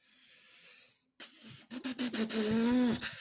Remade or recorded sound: recorded